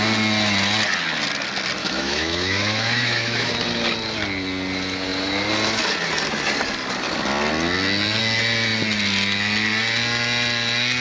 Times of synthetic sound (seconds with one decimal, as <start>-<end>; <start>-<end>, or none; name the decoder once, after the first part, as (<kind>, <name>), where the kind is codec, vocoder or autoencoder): 1.8-3.5 (autoencoder, DAC-VAE)